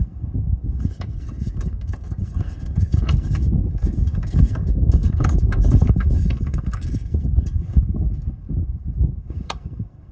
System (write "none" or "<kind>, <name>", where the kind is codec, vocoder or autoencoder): codec, SNAC